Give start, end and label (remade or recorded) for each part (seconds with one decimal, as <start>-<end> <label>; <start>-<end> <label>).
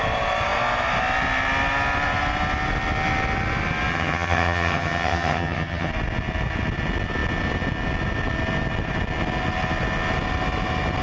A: 0.0-3.9 recorded; 3.9-5.9 remade; 5.9-11.0 recorded